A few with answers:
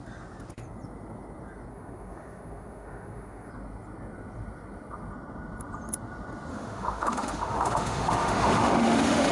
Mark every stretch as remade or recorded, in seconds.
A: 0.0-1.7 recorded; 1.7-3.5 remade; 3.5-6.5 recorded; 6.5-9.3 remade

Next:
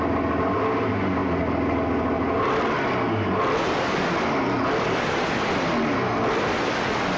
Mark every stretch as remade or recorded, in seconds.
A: 0.0-7.2 recorded

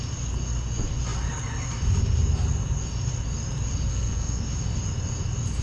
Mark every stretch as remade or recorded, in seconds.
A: 0.0-3.9 recorded; 3.9-4.4 remade; 4.4-5.6 recorded

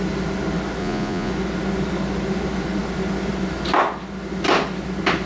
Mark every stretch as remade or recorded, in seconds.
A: 0.0-0.8 recorded; 0.8-1.3 remade; 1.3-5.3 recorded

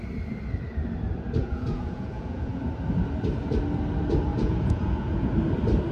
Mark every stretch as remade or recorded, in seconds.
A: 0.0-1.4 recorded; 1.4-2.7 remade; 2.7-4.3 recorded; 4.3-5.3 remade; 5.3-5.9 recorded